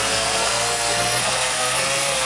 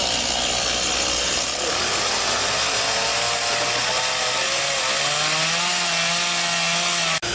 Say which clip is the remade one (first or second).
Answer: first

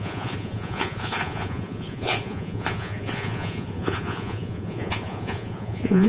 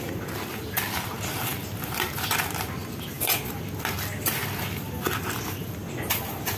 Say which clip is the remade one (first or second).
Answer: first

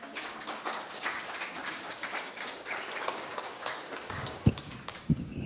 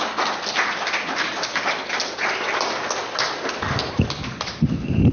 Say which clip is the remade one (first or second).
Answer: first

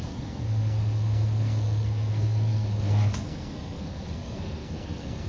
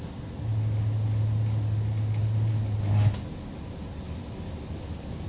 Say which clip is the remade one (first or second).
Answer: first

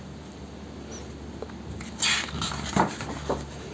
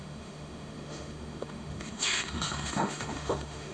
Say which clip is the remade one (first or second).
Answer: second